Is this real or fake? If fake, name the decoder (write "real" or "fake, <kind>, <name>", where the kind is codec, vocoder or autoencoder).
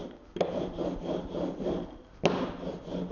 real